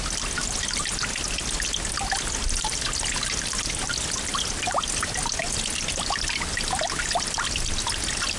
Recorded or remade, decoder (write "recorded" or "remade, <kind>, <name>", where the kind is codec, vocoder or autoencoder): recorded